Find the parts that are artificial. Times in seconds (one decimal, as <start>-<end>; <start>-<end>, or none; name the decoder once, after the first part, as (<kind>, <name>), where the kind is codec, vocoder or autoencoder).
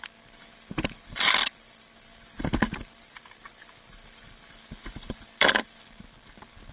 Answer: 0.0-6.7 (vocoder, BigVGAN v2)